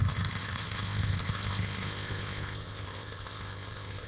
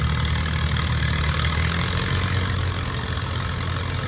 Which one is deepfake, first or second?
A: first